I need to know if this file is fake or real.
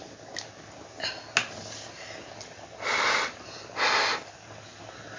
real